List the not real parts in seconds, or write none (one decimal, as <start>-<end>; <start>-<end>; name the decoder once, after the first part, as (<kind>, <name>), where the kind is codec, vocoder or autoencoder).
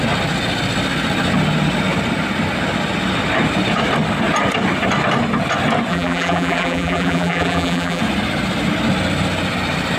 5.9-8.0 (vocoder, BigVGAN v2)